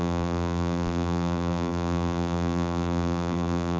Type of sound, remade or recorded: remade